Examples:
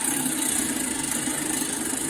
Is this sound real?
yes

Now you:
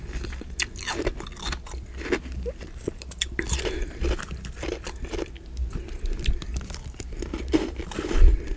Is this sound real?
yes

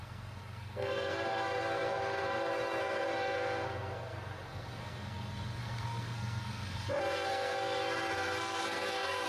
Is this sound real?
no